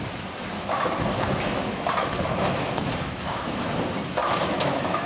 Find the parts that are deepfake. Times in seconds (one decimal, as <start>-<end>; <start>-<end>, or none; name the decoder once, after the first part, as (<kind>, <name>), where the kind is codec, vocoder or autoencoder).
0.5-3.6 (autoencoder, DAC-VAE); 4.2-5.1